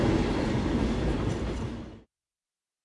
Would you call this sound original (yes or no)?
yes